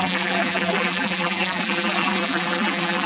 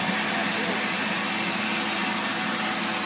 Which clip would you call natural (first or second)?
second